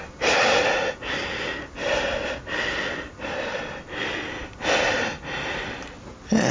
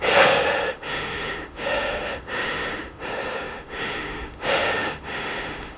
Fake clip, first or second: second